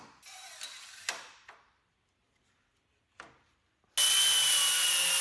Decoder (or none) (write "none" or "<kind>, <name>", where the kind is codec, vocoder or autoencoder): none